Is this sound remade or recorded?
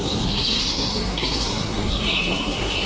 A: remade